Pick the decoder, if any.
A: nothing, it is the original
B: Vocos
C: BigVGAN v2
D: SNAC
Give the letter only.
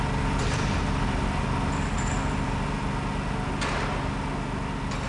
A